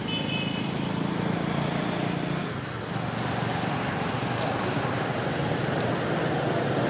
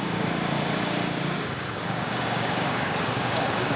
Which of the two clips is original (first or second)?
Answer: first